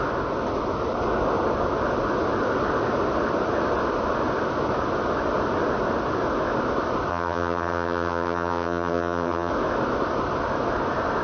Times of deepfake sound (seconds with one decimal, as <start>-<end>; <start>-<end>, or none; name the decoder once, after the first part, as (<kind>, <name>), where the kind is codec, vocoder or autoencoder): 7.1-9.5 (vocoder, HiFi-GAN)

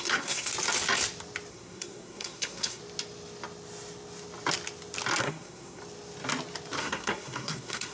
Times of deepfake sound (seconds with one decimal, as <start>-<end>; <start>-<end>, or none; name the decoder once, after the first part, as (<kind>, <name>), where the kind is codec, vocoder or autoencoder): 0.0-0.5 (codec, SNAC); 1.5-2.8; 5.2-5.8; 6.8-7.9

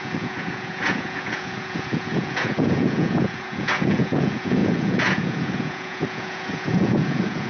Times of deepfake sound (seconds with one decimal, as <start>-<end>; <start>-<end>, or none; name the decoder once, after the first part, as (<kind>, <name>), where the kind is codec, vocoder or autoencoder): 0.0-7.5 (vocoder, Vocos)

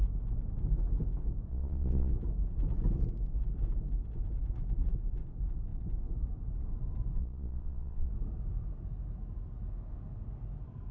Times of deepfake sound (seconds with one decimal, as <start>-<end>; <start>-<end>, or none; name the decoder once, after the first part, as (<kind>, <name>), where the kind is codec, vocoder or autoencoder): 1.5-2.1 (vocoder, Vocos); 7.2-8.1

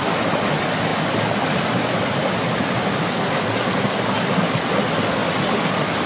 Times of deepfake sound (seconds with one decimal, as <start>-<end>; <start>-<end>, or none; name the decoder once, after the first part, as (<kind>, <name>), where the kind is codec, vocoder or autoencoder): none

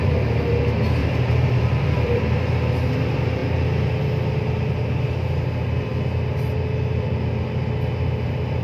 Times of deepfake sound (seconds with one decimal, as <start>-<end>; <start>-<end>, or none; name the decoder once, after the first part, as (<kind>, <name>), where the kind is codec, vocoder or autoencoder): 0.0-0.6 (vocoder, BigVGAN v2); 1.0-2.2; 5.9-7.6